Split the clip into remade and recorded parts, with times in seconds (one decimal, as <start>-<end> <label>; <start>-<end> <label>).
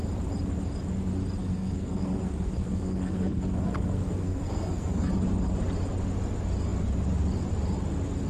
0.0-1.4 recorded; 1.4-5.1 remade; 5.1-8.3 recorded